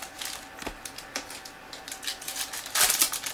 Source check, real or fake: real